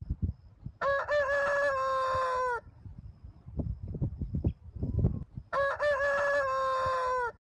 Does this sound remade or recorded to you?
recorded